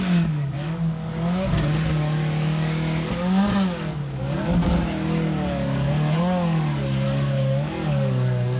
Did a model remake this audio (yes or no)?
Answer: yes